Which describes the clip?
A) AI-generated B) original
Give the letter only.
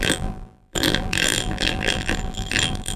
A